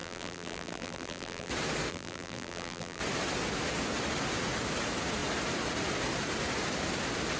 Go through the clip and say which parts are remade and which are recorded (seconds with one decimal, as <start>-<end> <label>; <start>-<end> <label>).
0.0-1.5 remade; 1.5-1.9 recorded; 1.9-3.0 remade; 3.0-7.4 recorded

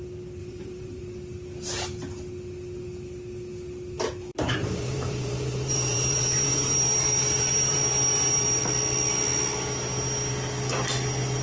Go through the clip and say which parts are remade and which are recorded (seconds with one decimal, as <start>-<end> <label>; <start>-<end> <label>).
0.0-0.4 recorded; 0.4-1.0 remade; 1.0-4.3 recorded; 4.3-8.6 remade; 8.6-11.4 recorded

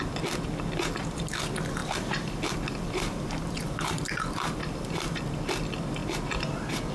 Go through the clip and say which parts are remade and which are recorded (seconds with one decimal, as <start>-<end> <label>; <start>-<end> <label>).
0.0-1.8 recorded; 1.8-5.2 remade; 5.2-6.9 recorded

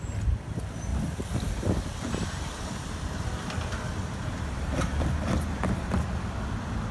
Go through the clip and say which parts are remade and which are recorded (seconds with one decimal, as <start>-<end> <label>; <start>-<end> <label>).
0.0-0.9 recorded; 0.9-4.6 remade; 4.6-6.9 recorded

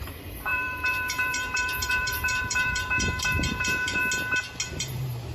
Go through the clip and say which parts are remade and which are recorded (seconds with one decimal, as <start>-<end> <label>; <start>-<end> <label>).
0.0-4.0 remade; 4.0-4.7 recorded; 4.7-5.3 remade